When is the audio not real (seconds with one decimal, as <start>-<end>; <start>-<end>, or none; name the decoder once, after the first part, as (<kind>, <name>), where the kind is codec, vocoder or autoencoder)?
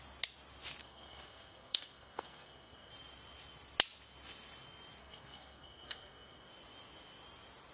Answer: 0.8-2.9 (codec, SNAC); 5.0-6.5